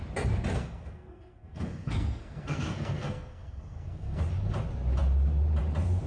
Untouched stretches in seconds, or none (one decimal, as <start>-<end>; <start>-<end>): 0.0-0.5; 4.2-6.1